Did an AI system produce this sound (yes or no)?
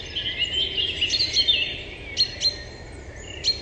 no